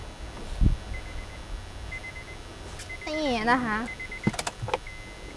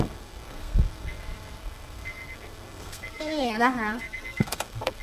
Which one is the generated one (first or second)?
second